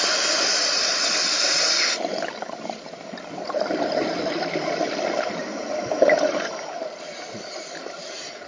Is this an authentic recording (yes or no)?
no